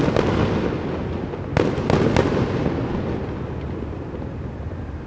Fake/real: real